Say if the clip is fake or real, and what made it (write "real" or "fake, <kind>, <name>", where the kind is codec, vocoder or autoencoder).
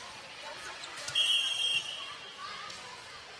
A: fake, vocoder, Vocos